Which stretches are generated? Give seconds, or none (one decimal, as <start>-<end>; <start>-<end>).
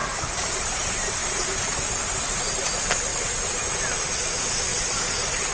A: 0.0-0.6; 1.2-2.2; 4.7-5.5